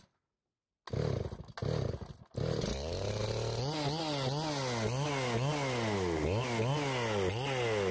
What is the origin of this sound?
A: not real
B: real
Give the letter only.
B